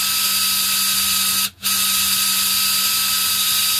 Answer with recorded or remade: recorded